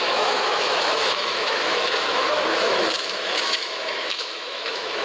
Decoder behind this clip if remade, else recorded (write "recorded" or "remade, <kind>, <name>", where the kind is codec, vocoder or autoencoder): remade, autoencoder, DAC-VAE